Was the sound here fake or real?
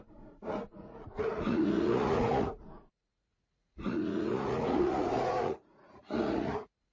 fake